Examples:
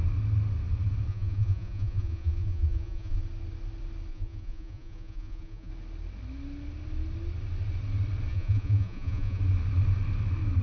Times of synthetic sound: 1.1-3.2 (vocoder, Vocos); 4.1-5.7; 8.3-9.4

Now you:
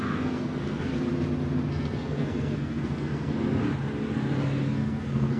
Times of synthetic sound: 0.0-0.9 (codec, SNAC); 1.7-3.6; 4.7-5.4

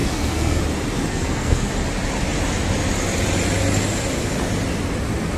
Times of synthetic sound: 0.0-0.6 (codec, SNAC); 1.1-1.7

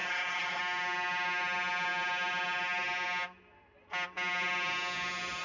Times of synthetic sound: 0.0-0.6 (codec, SNAC)

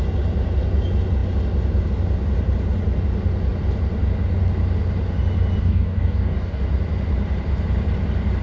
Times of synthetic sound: 5.6-6.6 (codec, DAC)

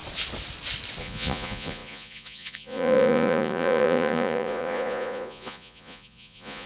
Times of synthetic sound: 1.0-6.7 (vocoder, Vocos)